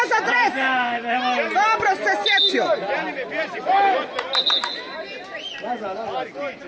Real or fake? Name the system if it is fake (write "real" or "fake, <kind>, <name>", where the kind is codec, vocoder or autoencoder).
real